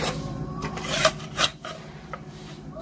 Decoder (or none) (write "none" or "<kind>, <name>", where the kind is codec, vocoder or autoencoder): vocoder, BigVGAN v2